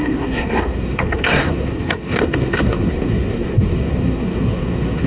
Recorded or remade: remade